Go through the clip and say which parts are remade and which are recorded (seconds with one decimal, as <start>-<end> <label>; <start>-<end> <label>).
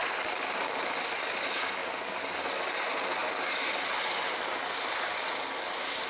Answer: 0.0-1.8 remade; 1.8-2.7 recorded; 2.7-6.1 remade